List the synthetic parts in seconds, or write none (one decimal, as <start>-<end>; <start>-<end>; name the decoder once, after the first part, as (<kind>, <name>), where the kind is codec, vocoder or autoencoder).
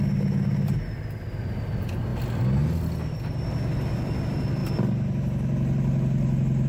none